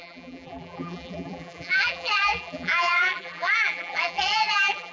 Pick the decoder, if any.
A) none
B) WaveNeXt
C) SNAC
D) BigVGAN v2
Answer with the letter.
D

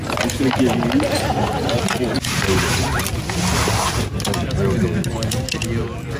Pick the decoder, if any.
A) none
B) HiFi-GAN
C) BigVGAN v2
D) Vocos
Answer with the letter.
A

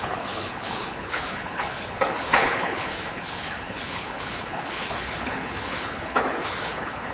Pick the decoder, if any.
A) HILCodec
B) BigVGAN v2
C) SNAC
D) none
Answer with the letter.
A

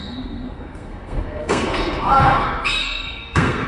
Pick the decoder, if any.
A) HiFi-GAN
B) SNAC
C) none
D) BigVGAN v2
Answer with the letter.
B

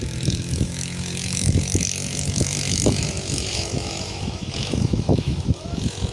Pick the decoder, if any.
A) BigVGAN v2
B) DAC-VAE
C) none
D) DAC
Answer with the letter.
B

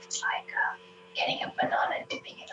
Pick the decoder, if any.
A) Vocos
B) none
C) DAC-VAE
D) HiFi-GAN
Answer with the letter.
C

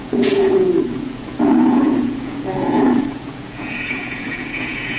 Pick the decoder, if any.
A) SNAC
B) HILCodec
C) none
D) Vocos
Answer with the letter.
D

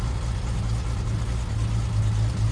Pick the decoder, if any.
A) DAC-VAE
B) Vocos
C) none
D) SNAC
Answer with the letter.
C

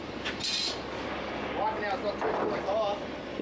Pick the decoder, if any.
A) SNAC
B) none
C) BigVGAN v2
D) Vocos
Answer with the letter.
B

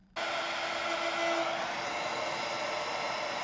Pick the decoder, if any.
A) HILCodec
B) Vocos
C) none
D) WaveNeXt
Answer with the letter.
C